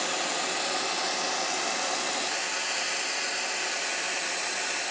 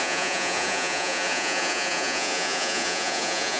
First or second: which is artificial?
second